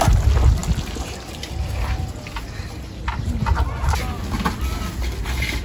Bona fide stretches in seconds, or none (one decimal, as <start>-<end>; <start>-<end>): 0.0-5.6